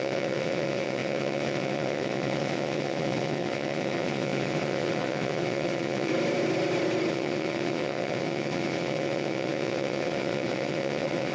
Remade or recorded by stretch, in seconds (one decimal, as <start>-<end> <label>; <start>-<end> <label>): 0.0-6.1 remade; 6.1-7.1 recorded; 7.1-11.3 remade